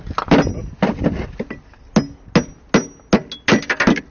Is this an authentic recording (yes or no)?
yes